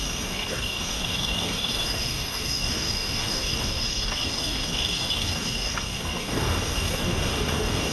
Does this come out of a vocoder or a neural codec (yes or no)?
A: yes